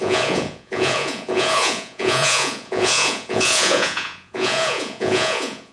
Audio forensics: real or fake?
fake